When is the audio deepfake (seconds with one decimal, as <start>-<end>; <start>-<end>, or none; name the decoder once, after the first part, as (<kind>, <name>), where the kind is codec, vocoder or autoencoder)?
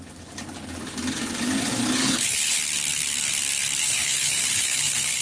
2.0-2.6 (codec, HILCodec); 3.8-5.2